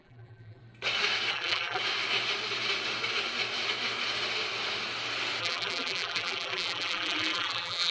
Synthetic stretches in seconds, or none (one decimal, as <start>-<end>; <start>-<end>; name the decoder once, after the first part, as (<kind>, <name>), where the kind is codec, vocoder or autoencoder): 0.0-0.6 (vocoder, BigVGAN v2); 1.3-1.8; 5.4-7.9